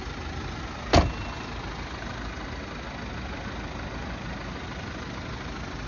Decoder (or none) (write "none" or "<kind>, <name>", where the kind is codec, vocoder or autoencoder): none